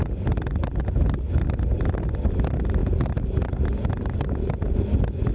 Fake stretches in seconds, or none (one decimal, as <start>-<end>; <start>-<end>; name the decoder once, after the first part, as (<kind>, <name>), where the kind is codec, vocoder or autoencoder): 0.0-0.8 (vocoder, BigVGAN v2)